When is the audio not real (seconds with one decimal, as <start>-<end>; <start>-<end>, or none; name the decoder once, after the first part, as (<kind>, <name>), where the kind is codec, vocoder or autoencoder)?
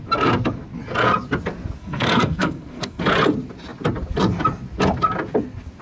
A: 1.8-3.0 (codec, SNAC)